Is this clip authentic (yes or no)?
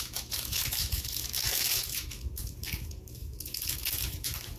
no